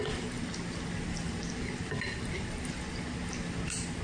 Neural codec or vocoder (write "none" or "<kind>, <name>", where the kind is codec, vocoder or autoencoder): none